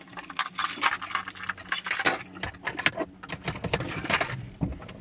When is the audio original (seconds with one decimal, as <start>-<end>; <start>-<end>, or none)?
0.0-5.0